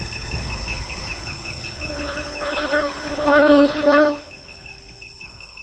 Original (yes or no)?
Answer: no